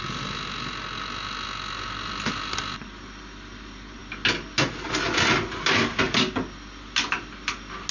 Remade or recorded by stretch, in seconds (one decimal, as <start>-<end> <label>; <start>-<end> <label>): 0.0-7.9 recorded